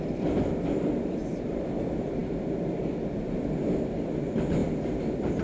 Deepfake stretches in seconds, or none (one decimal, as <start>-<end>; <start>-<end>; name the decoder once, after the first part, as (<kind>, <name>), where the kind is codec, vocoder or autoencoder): none